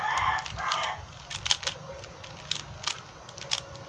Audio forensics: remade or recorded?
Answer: recorded